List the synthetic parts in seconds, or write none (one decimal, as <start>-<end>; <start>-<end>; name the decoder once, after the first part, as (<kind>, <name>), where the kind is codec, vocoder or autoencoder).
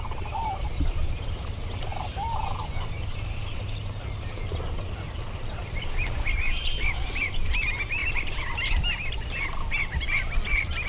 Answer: 0.0-8.0 (vocoder, BigVGAN v2); 8.7-10.9